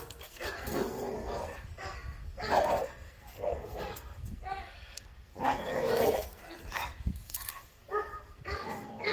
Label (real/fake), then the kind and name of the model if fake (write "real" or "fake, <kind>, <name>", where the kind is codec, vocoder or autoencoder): fake, codec, SNAC